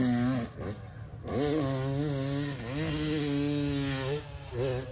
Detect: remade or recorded recorded